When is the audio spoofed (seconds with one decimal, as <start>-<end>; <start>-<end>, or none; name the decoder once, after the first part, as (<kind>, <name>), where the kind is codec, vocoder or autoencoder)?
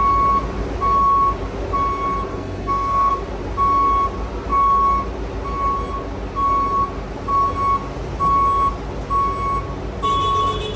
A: 2.3-3.1 (codec, SNAC)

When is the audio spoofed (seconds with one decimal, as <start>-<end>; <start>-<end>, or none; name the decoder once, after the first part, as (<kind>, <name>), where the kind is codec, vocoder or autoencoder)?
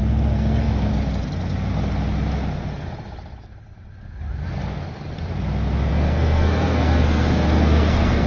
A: 0.0-0.9 (codec, SNAC); 5.9-8.3